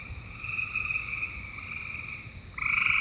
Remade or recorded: recorded